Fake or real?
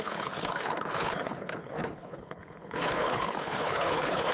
fake